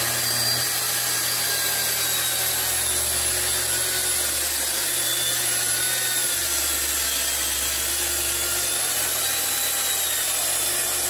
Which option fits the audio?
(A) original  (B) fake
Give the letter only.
A